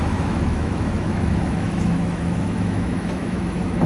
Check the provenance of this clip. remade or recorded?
remade